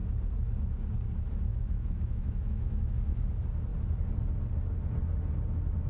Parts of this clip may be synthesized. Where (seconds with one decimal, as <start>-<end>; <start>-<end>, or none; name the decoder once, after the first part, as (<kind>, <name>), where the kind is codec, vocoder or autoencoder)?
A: 1.5-3.2 (autoencoder, DAC-VAE)

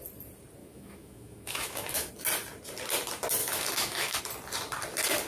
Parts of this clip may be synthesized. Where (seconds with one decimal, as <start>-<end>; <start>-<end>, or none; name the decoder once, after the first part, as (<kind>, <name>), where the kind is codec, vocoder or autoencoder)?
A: 0.6-2.1 (autoencoder, DAC-VAE); 3.4-4.2